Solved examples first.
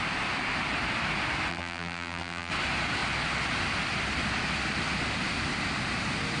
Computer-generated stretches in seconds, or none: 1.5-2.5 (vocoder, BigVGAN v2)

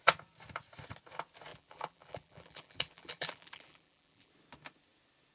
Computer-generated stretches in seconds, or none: 1.5-4.3 (vocoder, BigVGAN v2)

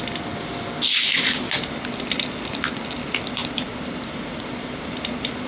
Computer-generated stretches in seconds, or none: 3.4-5.5 (vocoder, BigVGAN v2)

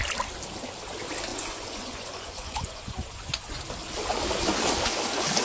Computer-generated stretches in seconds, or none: 1.3-3.6 (vocoder, Vocos)